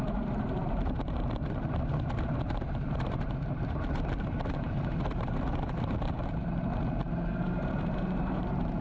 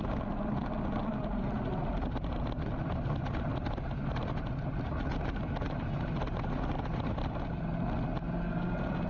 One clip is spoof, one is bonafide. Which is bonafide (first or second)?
second